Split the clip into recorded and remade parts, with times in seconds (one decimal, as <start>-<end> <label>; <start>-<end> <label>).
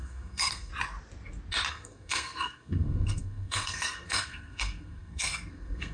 0.0-0.7 remade; 0.7-1.7 recorded; 1.7-5.9 remade